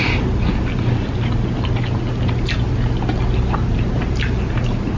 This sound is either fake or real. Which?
real